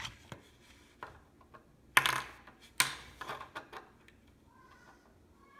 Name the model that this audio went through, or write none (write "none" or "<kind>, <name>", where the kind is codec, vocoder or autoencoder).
none